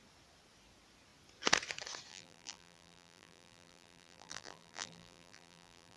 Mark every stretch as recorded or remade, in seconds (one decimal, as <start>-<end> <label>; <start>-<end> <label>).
0.0-2.1 recorded; 2.1-6.0 remade